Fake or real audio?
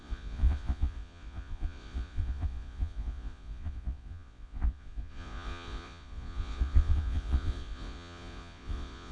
fake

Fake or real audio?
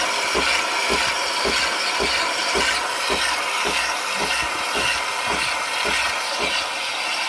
real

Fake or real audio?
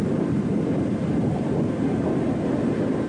fake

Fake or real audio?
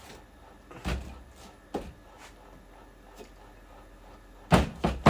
real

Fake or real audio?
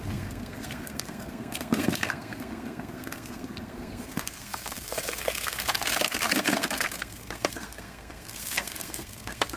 fake